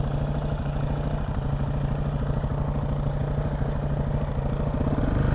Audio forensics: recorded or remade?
recorded